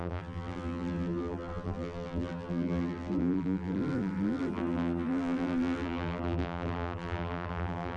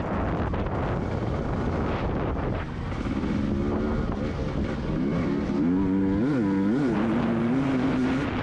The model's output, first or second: first